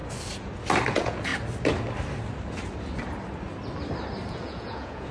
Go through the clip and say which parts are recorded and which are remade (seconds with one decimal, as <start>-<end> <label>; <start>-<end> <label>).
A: 0.0-0.9 recorded; 0.9-1.3 remade; 1.3-4.3 recorded; 4.3-5.1 remade